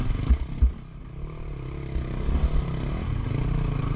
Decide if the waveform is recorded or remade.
recorded